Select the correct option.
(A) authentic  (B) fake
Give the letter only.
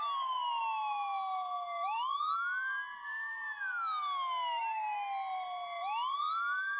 A